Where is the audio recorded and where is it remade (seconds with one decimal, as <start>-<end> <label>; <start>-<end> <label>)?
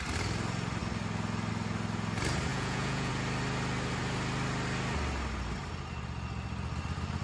0.0-2.5 recorded; 2.5-3.1 remade; 3.1-7.2 recorded